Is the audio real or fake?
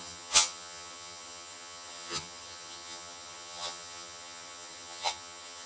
fake